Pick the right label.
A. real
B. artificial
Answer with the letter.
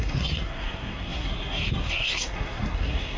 B